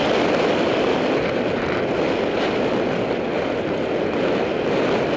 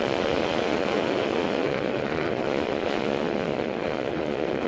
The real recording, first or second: first